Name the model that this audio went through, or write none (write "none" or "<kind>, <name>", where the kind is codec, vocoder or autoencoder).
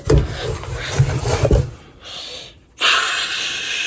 none